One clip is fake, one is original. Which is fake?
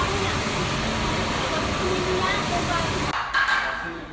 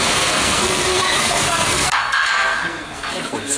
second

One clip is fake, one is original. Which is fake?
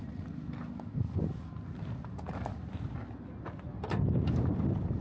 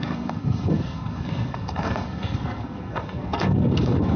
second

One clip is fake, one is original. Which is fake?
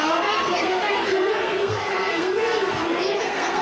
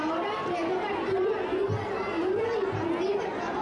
first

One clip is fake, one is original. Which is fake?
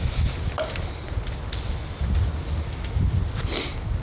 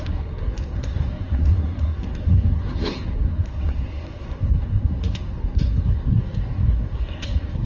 second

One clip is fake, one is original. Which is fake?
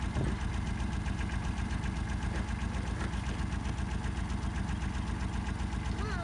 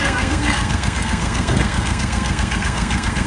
second